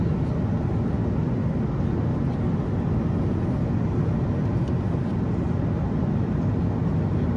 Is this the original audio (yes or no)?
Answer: yes